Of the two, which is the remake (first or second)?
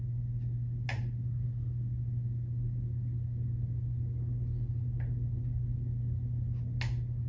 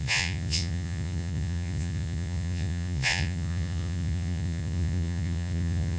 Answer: second